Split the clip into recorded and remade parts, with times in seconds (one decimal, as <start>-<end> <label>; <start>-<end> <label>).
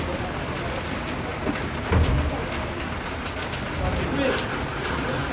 0.0-5.3 recorded